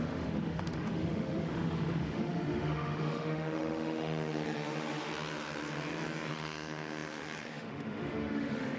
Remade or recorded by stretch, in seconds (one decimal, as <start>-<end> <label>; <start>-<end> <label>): 0.0-5.1 remade; 5.1-6.3 recorded; 6.3-8.8 remade